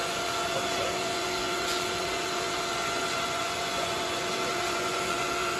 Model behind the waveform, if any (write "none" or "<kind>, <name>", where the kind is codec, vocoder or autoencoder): vocoder, Vocos